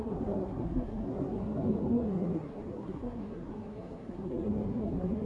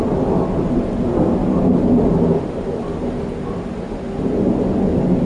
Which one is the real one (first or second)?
second